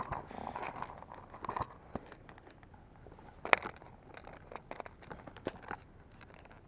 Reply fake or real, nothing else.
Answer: real